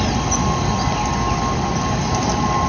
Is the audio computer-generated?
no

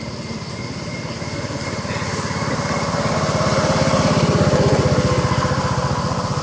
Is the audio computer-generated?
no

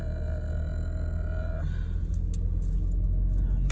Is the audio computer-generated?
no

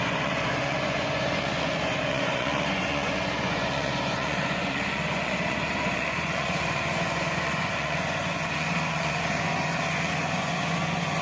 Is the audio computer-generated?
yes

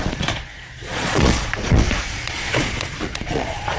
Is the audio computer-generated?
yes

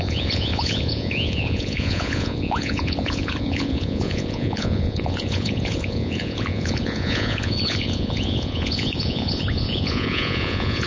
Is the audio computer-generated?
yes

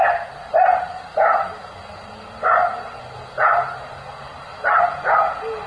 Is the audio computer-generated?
no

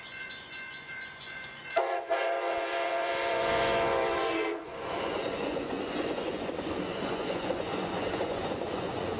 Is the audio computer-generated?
yes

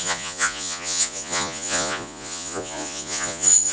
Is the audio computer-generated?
yes